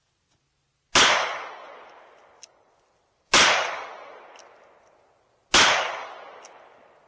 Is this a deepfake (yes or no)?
no